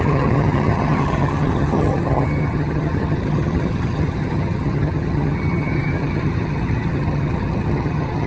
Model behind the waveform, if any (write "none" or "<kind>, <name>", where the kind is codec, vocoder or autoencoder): vocoder, HiFi-GAN